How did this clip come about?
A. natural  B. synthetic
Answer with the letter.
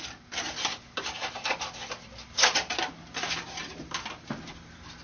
A